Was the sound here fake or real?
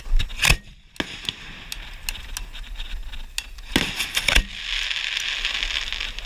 real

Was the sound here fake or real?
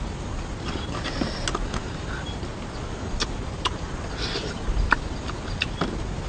real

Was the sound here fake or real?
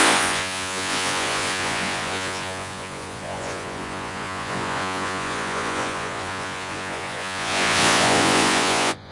fake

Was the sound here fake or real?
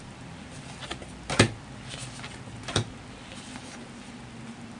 real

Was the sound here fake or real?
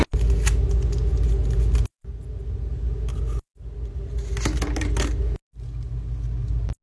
real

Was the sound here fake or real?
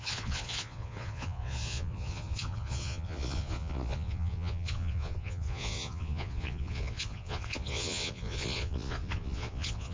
fake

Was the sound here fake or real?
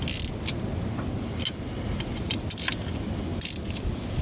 real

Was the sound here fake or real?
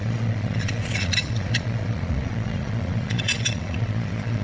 fake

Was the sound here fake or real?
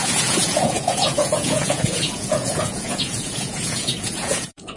fake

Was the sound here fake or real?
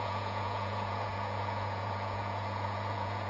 fake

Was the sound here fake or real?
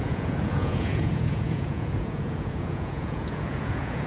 fake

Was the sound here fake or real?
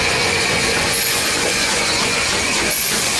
fake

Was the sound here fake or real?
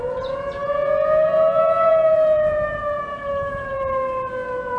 fake